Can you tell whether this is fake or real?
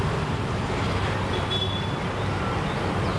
real